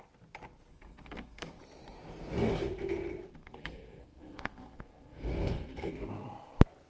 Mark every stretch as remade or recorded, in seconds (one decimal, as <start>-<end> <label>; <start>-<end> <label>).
0.0-0.7 recorded; 0.7-1.6 remade; 1.6-3.3 recorded; 3.3-6.1 remade; 6.1-6.9 recorded